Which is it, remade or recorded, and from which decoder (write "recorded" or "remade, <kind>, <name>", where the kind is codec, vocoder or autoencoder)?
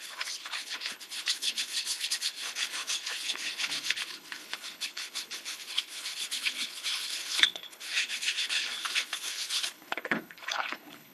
remade, codec, HILCodec